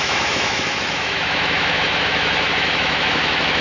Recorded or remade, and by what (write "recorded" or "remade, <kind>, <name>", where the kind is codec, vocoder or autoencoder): remade, autoencoder, DAC-VAE